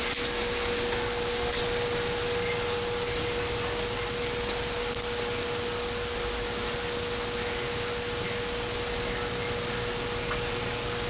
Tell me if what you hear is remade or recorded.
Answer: recorded